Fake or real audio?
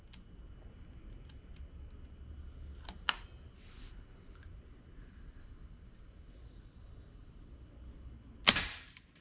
real